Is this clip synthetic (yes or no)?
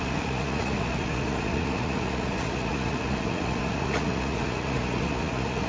yes